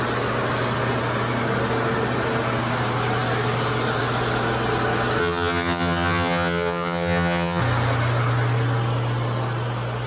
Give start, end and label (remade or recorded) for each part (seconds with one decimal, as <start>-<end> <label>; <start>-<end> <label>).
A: 0.0-5.2 recorded; 5.2-7.6 remade; 7.6-10.1 recorded